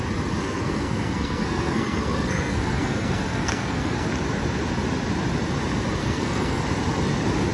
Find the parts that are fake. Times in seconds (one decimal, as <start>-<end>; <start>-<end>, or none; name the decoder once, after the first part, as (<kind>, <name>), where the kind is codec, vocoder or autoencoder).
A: 0.4-4.1 (codec, SNAC); 6.0-6.6